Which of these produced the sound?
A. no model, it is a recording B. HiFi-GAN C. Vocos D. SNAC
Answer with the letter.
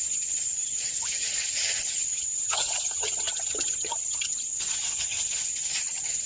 B